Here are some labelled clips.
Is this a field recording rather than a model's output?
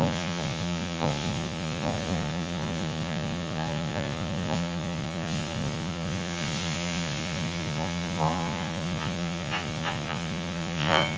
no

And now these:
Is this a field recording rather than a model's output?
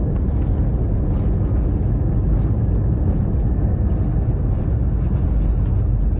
yes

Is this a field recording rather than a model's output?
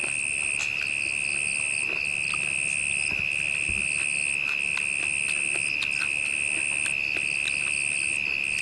yes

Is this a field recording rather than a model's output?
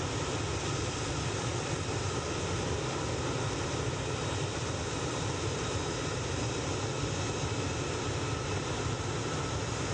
yes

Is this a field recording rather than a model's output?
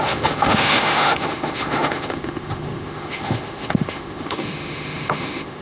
no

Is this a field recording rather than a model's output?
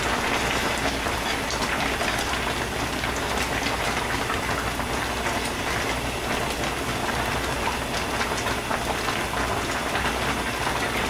yes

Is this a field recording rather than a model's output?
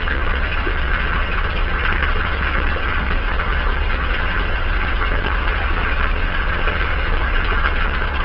no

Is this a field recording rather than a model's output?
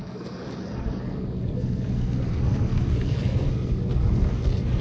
no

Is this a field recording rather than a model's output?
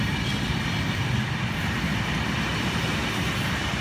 yes